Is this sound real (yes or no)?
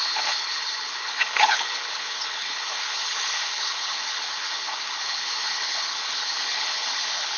no